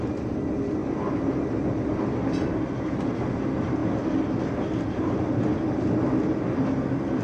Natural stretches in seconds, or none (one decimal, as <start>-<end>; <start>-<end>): 0.0-7.2